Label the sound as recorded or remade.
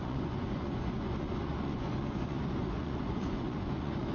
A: remade